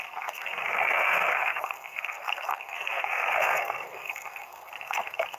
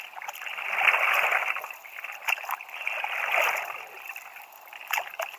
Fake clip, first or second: first